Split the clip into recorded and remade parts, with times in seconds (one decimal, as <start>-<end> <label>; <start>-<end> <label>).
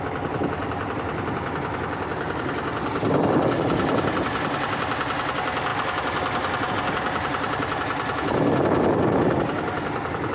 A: 0.0-10.3 recorded